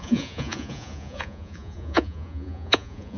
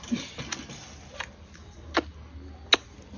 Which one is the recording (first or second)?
second